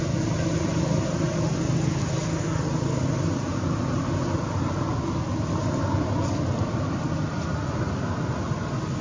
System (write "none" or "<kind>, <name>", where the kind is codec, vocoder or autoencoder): none